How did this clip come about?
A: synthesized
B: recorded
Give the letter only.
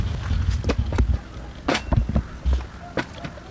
B